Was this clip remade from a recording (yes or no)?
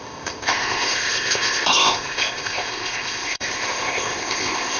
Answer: yes